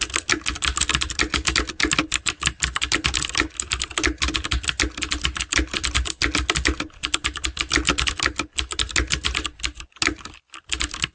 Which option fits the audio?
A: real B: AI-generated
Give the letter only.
A